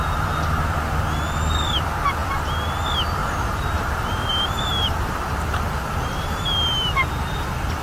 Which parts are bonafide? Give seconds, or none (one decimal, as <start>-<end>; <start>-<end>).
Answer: 0.0-3.2; 6.4-7.8

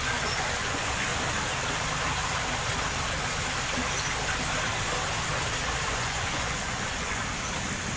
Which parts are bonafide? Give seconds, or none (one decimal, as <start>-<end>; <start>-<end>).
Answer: 1.1-5.9; 7.2-8.0

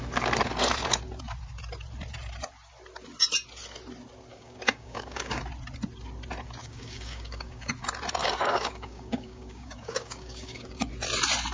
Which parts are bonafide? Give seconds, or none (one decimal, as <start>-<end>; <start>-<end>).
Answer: 0.0-4.3; 5.4-6.6; 7.7-8.2; 10.9-11.5

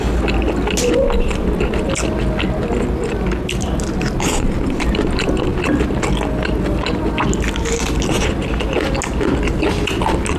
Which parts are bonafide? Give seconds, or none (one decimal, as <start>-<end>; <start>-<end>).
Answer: 0.0-10.4